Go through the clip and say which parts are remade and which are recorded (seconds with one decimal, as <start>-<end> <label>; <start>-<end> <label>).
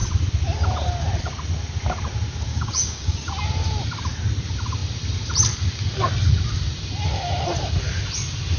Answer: 0.0-2.5 recorded; 2.5-3.3 remade; 3.3-8.6 recorded